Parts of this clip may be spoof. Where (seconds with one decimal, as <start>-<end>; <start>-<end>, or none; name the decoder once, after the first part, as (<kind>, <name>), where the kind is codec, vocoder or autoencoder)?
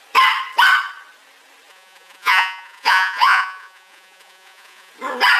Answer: 1.7-4.9 (vocoder, Vocos)